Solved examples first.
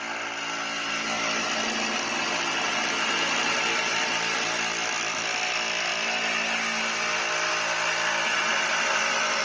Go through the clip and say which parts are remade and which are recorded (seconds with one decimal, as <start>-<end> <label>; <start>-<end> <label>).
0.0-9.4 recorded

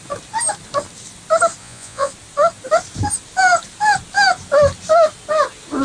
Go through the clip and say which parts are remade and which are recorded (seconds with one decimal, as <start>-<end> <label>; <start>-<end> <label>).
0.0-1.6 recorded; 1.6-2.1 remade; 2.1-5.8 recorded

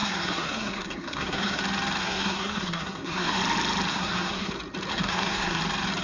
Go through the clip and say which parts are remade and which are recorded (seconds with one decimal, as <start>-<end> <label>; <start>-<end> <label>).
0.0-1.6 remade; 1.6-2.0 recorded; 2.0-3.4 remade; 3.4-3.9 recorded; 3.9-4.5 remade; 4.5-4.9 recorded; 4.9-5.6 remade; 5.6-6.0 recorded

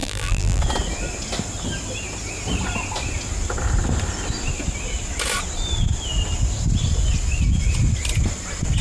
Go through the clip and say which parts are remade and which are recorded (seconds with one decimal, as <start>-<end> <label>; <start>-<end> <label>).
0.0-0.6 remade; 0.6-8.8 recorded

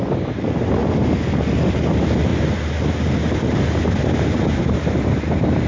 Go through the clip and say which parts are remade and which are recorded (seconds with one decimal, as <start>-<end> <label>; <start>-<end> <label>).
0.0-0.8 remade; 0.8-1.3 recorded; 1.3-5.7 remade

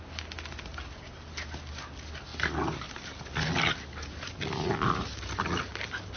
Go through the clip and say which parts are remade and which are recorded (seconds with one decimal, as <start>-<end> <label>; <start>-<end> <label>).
0.0-6.2 recorded

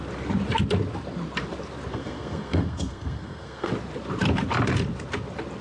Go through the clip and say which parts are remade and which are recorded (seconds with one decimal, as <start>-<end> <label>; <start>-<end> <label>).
0.0-1.9 recorded; 1.9-3.7 remade; 3.7-5.6 recorded